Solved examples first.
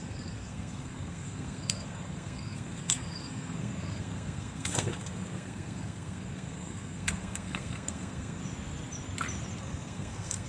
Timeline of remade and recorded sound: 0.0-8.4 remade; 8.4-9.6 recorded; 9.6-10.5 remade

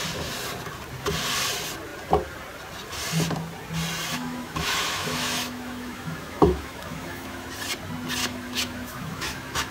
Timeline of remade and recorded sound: 0.0-4.1 recorded; 4.1-7.5 remade; 7.5-8.2 recorded; 8.2-9.7 remade

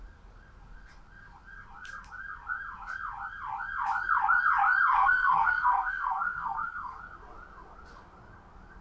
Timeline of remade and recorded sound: 0.0-5.0 recorded; 5.0-7.0 remade; 7.0-8.8 recorded

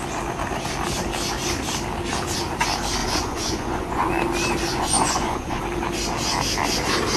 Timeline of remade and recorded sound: 0.0-3.0 recorded; 3.0-4.1 remade; 4.1-4.7 recorded; 4.7-5.6 remade; 5.6-7.2 recorded

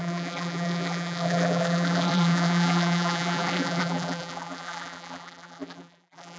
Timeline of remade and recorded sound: 0.0-6.4 remade

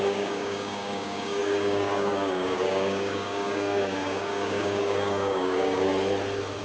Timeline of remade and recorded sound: 0.0-5.9 remade; 5.9-6.6 recorded

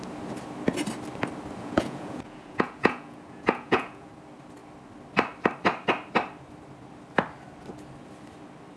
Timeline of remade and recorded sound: 0.0-1.6 recorded; 1.6-4.1 remade; 4.1-8.8 recorded